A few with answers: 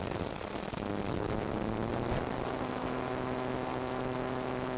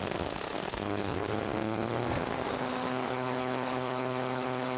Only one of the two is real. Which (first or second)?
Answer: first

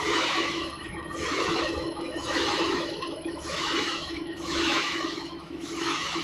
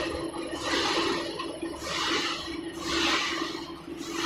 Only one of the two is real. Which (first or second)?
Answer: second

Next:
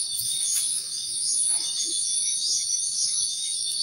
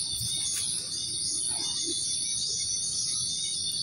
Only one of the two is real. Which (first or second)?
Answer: second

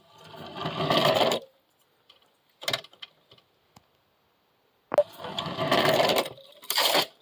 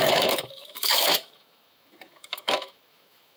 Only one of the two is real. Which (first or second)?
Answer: first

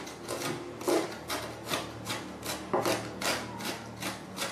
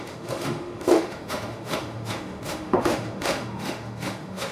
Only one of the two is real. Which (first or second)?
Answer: first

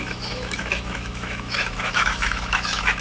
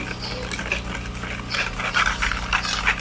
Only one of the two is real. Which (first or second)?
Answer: second